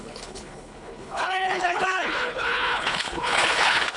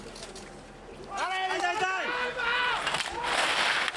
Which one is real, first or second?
second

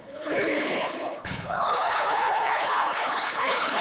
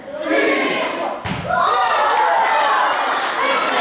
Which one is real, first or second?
second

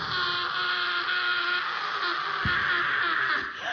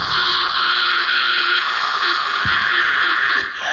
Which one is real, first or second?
first